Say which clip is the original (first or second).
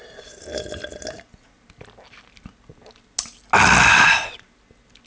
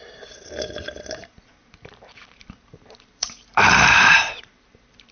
first